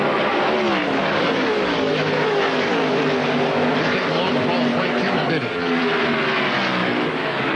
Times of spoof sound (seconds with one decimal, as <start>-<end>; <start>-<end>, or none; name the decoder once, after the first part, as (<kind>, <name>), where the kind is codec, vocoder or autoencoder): 0.8-2.4 (codec, DAC); 4.7-5.8; 6.8-7.6